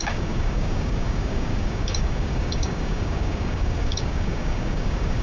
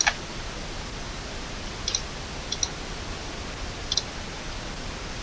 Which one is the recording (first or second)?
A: second